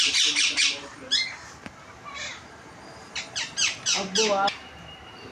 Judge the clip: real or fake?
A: fake